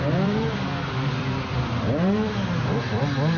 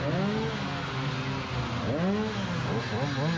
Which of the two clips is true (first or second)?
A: second